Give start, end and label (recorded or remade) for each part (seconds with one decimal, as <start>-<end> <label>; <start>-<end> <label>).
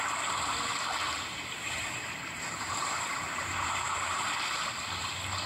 0.0-1.0 recorded; 1.0-4.3 remade; 4.3-5.5 recorded